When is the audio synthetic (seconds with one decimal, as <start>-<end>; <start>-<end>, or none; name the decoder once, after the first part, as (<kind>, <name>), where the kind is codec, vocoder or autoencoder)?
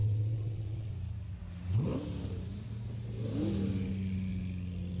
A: 0.0-0.9 (vocoder, WaveNeXt)